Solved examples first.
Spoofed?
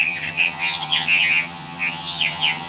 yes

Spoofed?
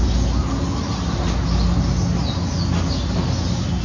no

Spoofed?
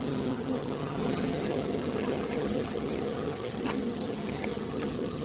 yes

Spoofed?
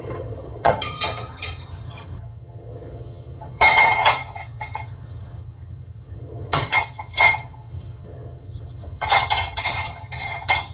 yes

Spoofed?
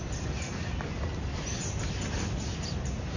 no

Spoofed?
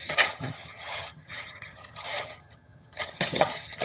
yes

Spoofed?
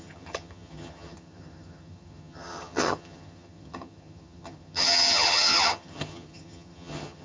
yes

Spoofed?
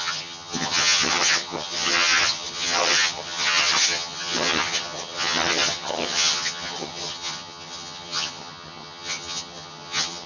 yes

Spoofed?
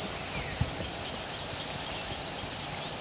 no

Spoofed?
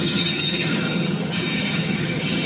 yes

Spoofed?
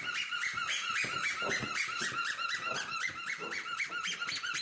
no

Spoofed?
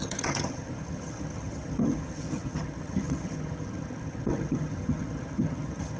yes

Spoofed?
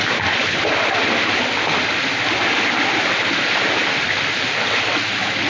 no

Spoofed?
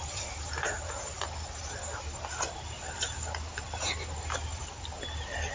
no